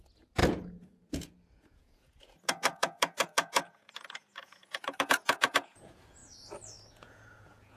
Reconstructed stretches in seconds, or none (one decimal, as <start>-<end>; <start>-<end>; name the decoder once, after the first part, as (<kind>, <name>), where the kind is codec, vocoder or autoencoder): 0.0-6.2 (vocoder, Vocos); 6.9-7.8